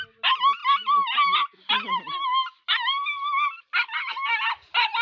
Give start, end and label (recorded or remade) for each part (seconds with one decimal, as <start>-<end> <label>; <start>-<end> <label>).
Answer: 0.0-5.0 recorded